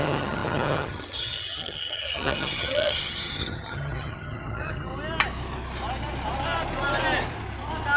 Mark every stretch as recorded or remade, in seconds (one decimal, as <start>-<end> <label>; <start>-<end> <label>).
0.0-4.9 remade; 4.9-8.0 recorded